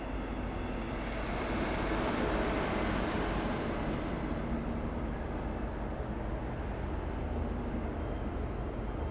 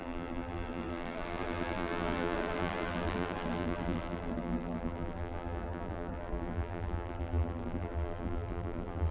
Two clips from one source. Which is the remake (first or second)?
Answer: second